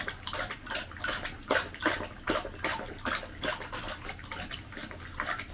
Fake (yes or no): no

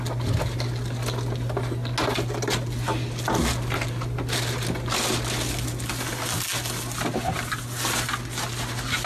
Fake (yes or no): no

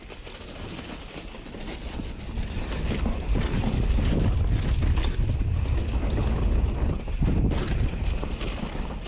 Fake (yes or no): no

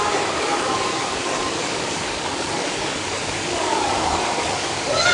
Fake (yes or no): yes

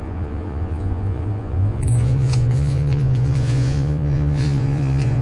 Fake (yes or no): yes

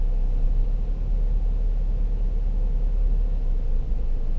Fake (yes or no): no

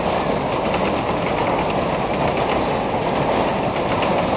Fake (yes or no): no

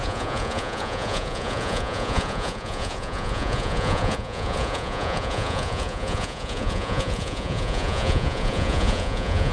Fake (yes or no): yes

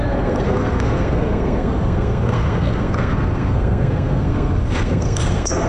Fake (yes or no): yes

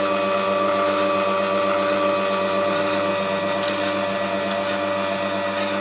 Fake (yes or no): no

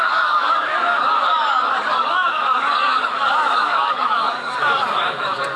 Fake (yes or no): yes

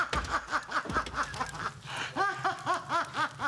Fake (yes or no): no